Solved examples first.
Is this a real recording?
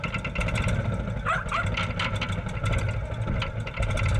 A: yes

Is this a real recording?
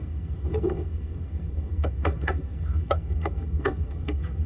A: no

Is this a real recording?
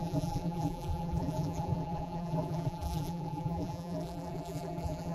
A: no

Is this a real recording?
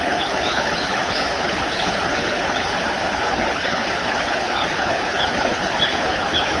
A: no